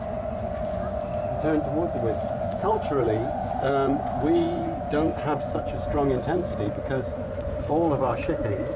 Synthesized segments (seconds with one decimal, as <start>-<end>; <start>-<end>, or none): 0.0-1.1; 2.2-8.8